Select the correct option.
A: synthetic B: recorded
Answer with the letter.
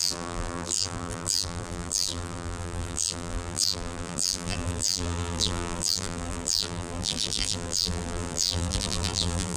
A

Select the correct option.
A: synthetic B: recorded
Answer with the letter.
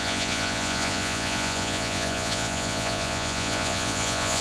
A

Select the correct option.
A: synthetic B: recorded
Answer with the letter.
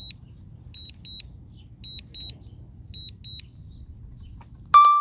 B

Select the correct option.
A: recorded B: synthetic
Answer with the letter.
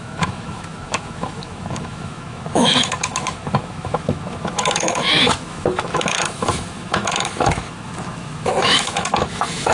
B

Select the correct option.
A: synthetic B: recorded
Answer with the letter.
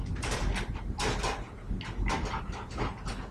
B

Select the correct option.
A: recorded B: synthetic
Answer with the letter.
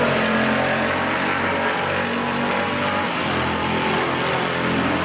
A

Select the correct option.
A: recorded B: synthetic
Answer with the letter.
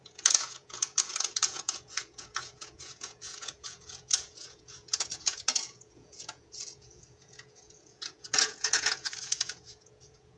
B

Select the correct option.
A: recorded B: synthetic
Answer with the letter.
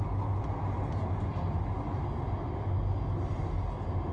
A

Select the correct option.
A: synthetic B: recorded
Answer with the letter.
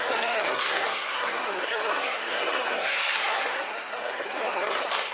A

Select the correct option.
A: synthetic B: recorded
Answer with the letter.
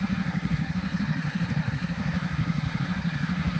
A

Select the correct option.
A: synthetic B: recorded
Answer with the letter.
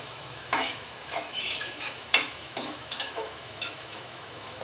A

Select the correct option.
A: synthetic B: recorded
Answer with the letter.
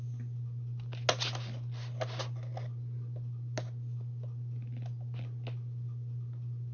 B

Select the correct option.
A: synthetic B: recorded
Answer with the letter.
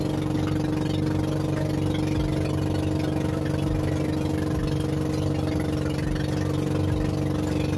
B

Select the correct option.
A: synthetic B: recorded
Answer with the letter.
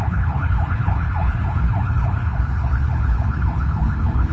A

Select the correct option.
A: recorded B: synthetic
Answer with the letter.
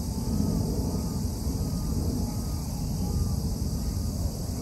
A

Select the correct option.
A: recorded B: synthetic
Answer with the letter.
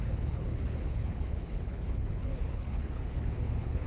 B